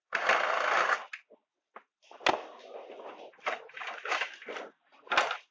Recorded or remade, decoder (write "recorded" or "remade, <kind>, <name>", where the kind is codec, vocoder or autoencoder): recorded